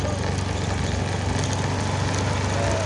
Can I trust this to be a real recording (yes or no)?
yes